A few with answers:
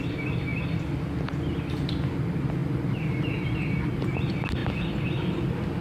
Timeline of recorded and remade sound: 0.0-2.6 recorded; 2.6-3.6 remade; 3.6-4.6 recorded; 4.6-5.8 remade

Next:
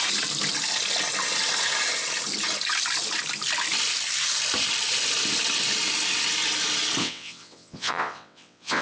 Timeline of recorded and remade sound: 0.0-7.0 recorded; 7.0-8.8 remade

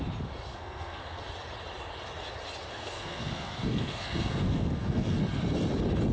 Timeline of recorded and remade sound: 0.0-0.5 recorded; 0.5-1.2 remade; 1.2-2.7 recorded; 2.7-5.2 remade; 5.2-6.1 recorded

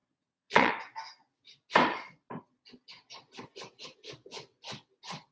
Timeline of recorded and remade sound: 0.0-0.7 remade; 0.7-5.3 recorded

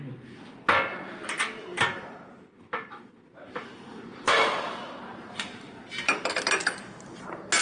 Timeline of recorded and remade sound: 0.0-1.7 recorded; 1.7-6.3 remade; 6.3-7.6 recorded

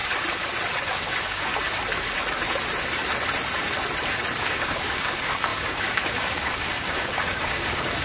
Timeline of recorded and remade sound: 0.0-0.9 recorded; 0.9-1.5 remade; 1.5-4.4 recorded; 4.4-8.0 remade

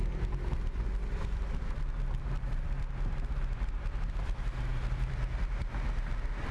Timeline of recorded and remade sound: 0.0-3.7 remade; 3.7-4.7 recorded; 4.7-5.7 remade; 5.7-6.5 recorded

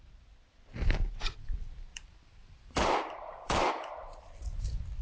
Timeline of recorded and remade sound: 0.0-1.9 recorded; 1.9-3.7 remade; 3.7-5.0 recorded